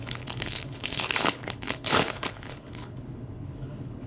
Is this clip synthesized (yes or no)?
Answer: yes